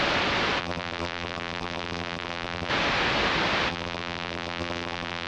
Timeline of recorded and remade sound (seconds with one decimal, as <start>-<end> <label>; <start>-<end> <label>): 0.0-0.6 recorded; 0.6-2.7 remade; 2.7-3.7 recorded; 3.7-5.3 remade